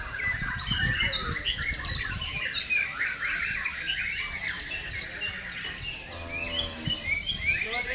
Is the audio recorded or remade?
recorded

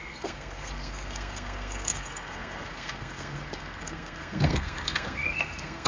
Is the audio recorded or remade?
remade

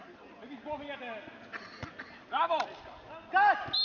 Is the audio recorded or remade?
recorded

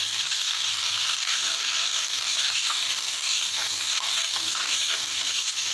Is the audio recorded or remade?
remade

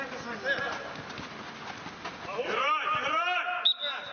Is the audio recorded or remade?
recorded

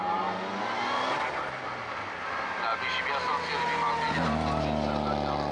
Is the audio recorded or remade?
recorded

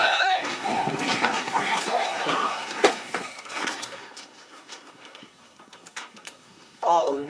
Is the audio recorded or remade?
remade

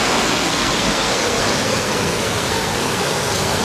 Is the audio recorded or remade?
remade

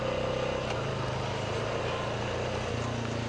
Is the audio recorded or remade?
recorded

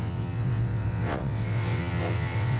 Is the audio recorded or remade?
remade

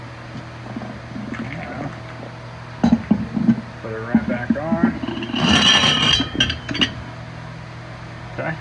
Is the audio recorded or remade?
recorded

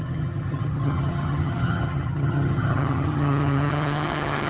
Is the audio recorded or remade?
remade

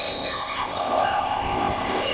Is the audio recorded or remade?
remade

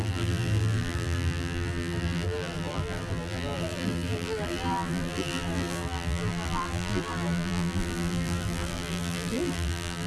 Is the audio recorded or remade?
remade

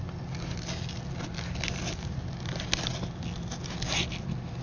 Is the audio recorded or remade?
recorded